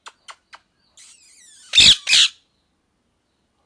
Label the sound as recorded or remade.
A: recorded